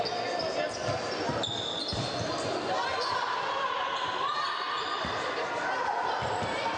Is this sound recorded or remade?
recorded